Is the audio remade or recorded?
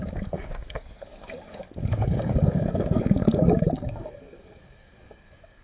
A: remade